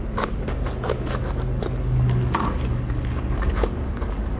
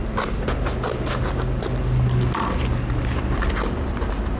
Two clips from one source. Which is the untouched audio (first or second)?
second